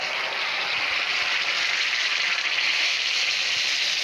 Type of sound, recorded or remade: recorded